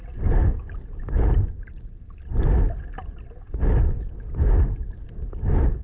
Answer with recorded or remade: recorded